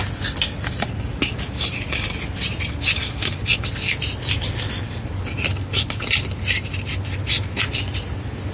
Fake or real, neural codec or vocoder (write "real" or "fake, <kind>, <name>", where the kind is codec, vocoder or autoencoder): real